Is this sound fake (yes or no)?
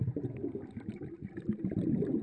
no